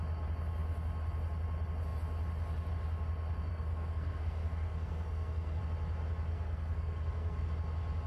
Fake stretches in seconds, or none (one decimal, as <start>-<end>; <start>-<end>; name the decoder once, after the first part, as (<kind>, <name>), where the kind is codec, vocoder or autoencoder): 3.5-5.6 (codec, SNAC); 6.3-7.5